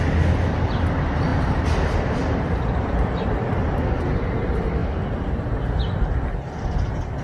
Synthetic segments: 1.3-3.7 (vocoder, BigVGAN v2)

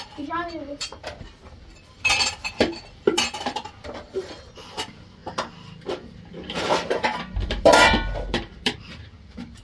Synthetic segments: 0.0-9.6 (vocoder, BigVGAN v2)

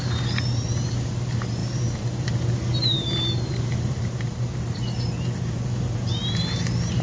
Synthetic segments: 0.0-7.0 (vocoder, BigVGAN v2)

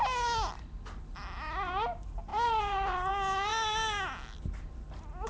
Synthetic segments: 2.3-3.1 (vocoder, BigVGAN v2)

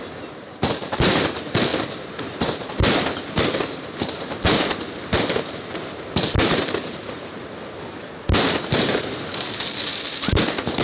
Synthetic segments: 0.0-7.0 (vocoder, BigVGAN v2); 8.9-10.8